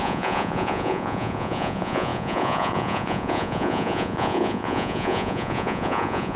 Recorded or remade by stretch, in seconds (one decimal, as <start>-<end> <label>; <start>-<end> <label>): 0.0-6.4 remade